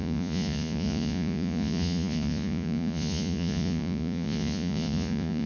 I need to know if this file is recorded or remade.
remade